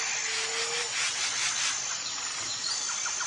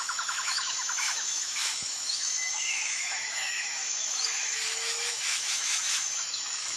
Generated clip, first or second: second